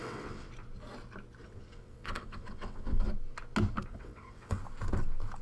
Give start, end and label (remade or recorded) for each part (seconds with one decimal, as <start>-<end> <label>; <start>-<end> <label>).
0.0-0.5 remade; 0.5-1.4 recorded; 1.4-3.1 remade; 3.1-3.9 recorded; 3.9-4.6 remade; 4.6-5.4 recorded